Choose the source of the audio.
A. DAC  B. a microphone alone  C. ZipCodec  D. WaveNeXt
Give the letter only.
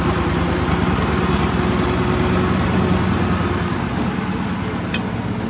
B